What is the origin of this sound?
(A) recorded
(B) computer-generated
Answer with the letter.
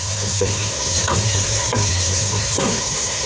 B